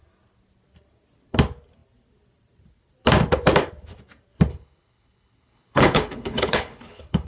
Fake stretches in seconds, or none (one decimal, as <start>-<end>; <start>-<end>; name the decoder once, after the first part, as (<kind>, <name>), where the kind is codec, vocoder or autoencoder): 4.5-7.3 (codec, HILCodec)